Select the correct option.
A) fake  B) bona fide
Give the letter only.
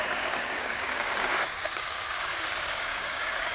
A